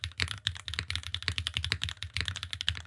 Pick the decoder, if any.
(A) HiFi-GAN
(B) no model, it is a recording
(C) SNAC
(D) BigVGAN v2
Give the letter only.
B